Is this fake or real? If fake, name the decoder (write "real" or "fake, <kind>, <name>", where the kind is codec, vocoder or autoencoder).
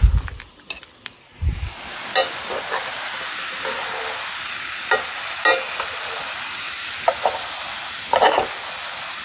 real